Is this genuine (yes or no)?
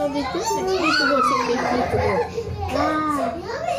yes